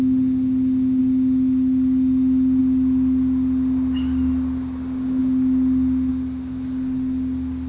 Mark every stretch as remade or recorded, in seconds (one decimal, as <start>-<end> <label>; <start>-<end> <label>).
0.0-7.7 recorded